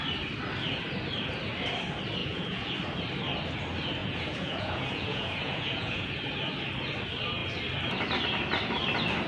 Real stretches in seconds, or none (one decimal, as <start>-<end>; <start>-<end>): 0.0-2.2; 2.7-4.0; 6.2-9.3